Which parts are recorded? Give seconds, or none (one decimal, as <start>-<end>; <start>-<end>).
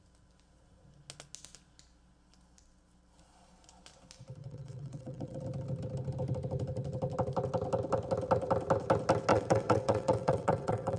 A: 0.0-4.4; 5.4-9.3